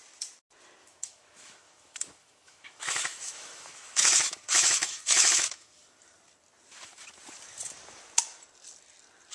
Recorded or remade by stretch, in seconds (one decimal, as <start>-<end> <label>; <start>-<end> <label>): 0.0-0.8 recorded; 0.8-5.7 remade; 5.7-9.3 recorded